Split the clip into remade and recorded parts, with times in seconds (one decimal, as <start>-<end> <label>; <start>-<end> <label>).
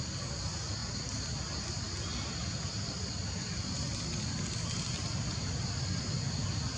0.0-6.8 recorded